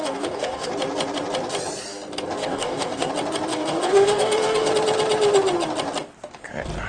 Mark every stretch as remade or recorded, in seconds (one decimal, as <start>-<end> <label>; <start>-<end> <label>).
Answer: 0.0-0.7 remade; 0.7-2.4 recorded; 2.4-3.1 remade; 3.1-3.5 recorded; 3.5-4.7 remade; 4.7-6.9 recorded